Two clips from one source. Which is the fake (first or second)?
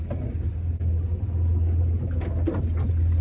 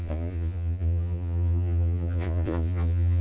second